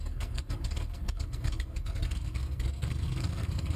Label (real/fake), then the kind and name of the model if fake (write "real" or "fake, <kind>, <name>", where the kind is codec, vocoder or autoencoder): fake, codec, SNAC